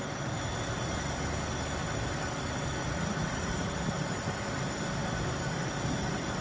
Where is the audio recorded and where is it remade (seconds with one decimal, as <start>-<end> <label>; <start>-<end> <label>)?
0.0-2.8 recorded; 2.8-3.8 remade; 3.8-6.4 recorded